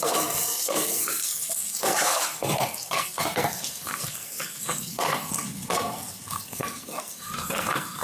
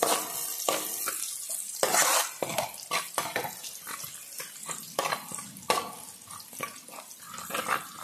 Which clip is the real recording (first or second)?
second